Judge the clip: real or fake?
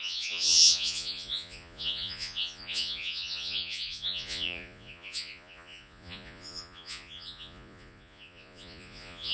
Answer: fake